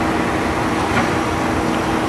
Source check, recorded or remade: recorded